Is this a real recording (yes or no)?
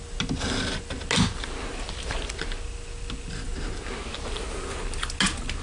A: yes